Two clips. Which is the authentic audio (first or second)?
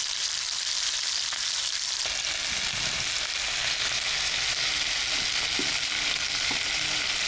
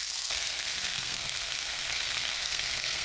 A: first